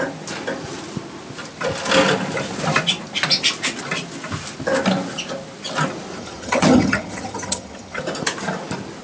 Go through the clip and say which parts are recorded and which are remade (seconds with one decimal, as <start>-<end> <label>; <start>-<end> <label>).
0.0-6.2 recorded; 6.2-8.0 remade; 8.0-9.0 recorded